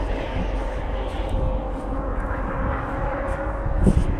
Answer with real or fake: fake